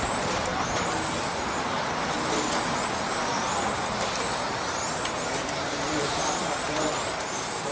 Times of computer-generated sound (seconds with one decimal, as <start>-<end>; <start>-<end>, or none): 0.0-0.5; 5.1-7.7